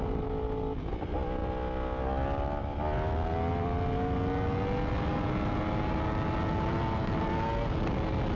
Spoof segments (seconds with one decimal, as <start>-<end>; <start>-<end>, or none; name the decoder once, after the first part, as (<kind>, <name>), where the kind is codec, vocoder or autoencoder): none